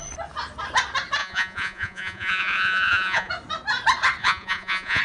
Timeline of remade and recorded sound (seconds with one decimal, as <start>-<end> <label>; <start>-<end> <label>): 0.0-1.2 recorded; 1.2-3.3 remade; 3.3-4.2 recorded; 4.2-5.0 remade